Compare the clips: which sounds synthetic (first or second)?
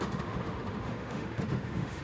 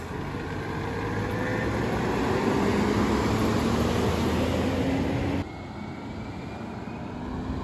first